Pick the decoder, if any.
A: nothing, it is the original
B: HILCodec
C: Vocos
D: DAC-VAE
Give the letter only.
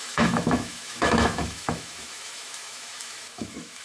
D